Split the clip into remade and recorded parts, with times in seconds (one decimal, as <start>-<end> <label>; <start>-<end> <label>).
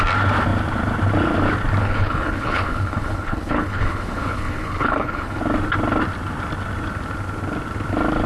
0.0-1.8 recorded; 1.8-5.4 remade; 5.4-8.3 recorded